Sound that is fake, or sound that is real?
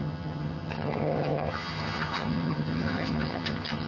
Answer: fake